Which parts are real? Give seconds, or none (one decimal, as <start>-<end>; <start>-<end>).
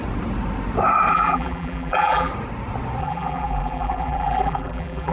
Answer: 0.0-1.1; 2.3-3.0